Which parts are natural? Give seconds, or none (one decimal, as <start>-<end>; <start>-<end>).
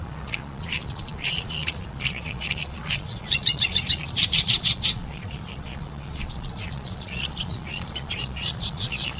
none